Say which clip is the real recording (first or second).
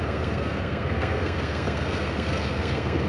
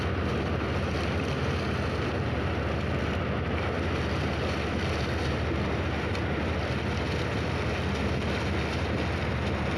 second